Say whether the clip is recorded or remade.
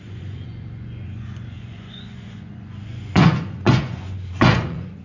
remade